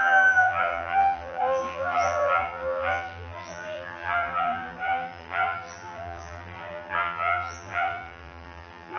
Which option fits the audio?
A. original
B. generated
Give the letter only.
B